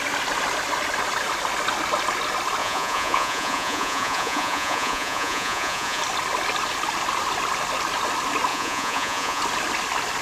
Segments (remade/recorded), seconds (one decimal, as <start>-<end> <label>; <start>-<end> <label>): 0.0-2.6 recorded; 2.6-6.0 remade; 6.0-8.5 recorded; 8.5-9.4 remade; 9.4-10.2 recorded

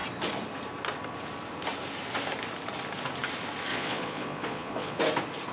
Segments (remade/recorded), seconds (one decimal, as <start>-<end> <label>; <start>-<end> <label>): 0.0-3.7 recorded; 3.7-5.0 remade; 5.0-5.5 recorded

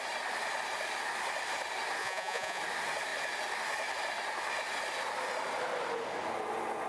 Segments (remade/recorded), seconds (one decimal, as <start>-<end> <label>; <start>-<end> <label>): 0.0-2.0 recorded; 2.0-2.6 remade; 2.6-6.9 recorded